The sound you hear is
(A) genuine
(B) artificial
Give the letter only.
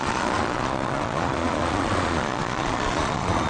B